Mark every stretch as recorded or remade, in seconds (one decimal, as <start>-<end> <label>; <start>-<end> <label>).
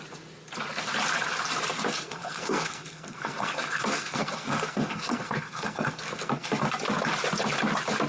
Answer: 0.0-1.9 recorded; 1.9-6.6 remade; 6.6-8.1 recorded